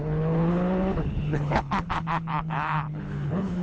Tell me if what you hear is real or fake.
fake